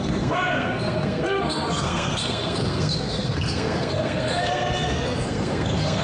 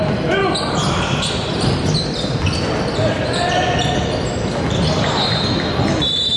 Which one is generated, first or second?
first